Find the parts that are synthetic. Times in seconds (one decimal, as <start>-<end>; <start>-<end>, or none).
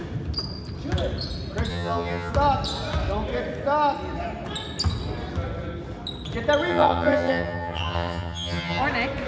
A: 1.7-2.3; 6.7-8.8